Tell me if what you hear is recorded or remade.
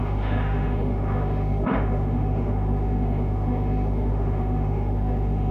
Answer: remade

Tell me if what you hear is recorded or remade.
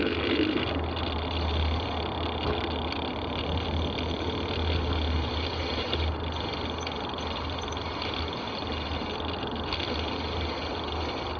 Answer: recorded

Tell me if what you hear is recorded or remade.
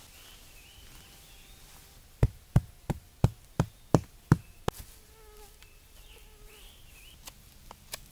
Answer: recorded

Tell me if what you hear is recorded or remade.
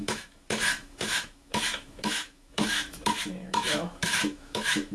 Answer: remade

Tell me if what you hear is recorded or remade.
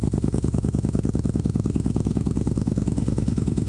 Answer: remade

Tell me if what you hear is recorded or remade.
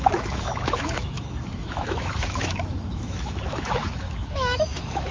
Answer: remade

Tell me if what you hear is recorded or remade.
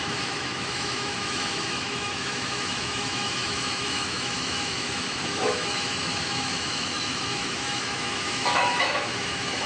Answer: remade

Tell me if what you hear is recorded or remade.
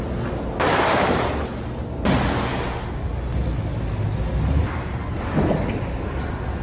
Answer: recorded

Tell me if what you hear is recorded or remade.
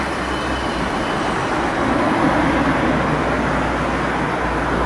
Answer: recorded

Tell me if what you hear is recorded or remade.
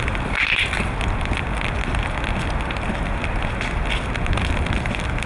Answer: recorded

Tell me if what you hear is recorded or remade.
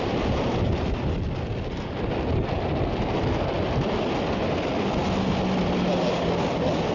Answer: recorded